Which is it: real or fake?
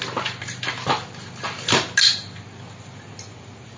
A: real